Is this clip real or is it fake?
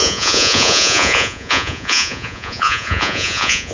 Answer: fake